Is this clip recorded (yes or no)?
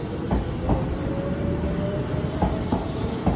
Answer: yes